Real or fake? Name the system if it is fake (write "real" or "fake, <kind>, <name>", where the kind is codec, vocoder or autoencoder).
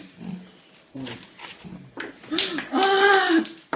real